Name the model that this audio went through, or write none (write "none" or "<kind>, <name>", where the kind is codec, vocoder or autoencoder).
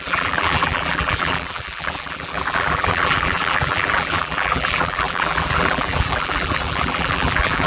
vocoder, BigVGAN v2